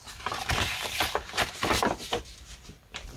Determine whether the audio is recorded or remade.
remade